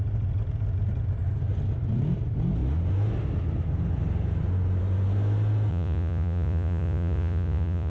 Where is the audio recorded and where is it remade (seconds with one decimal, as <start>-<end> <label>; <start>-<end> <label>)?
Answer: 0.0-5.7 recorded; 5.7-7.9 remade